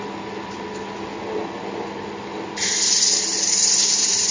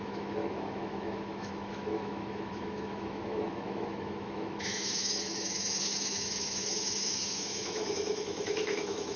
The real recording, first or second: first